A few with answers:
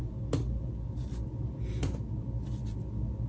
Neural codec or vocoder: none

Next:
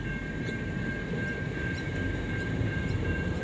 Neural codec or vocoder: vocoder, BigVGAN v2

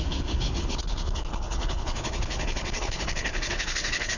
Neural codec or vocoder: codec, HILCodec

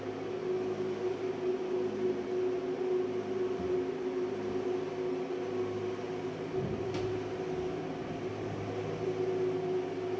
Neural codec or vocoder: none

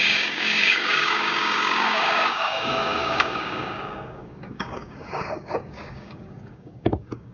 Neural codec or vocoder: codec, DAC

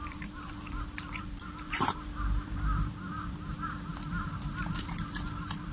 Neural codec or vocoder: vocoder, BigVGAN v2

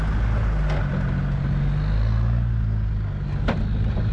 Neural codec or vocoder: none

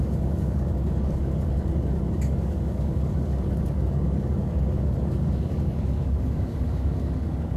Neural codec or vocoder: codec, DAC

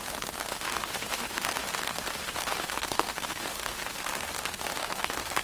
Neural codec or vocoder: autoencoder, DAC-VAE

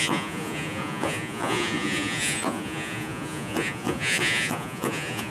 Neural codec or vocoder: vocoder, Vocos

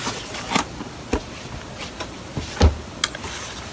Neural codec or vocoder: none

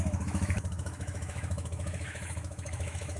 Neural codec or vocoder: autoencoder, DAC-VAE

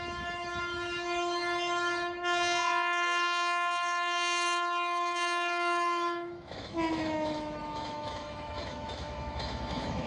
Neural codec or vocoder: autoencoder, DAC-VAE